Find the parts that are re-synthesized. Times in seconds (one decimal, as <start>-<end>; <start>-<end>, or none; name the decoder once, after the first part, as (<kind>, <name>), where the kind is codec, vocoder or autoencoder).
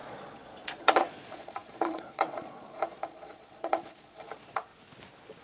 0.0-4.7 (vocoder, Vocos)